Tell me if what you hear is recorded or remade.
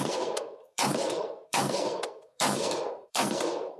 remade